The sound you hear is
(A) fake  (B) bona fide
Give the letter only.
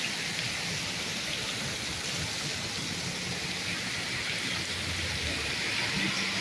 B